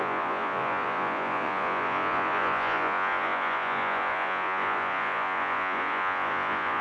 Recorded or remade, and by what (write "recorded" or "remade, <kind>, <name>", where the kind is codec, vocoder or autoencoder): remade, vocoder, Vocos